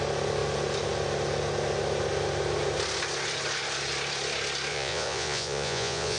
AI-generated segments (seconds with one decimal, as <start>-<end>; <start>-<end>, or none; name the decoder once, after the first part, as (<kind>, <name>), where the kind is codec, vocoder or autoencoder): 4.7-6.2 (vocoder, Vocos)